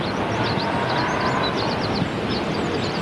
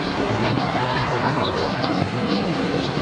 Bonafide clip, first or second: first